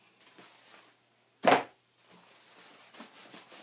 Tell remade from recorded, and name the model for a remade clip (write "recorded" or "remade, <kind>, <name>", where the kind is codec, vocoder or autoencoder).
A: recorded